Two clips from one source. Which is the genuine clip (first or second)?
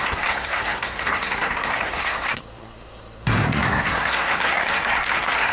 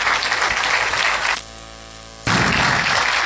second